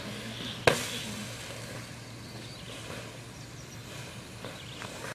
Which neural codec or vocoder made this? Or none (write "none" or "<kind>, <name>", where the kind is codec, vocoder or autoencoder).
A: none